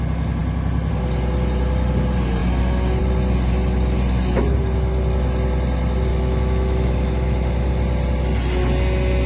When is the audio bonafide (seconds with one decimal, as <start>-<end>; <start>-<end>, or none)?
0.0-6.1; 7.7-9.3